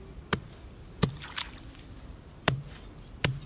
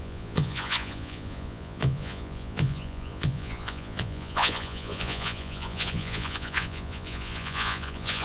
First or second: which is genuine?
first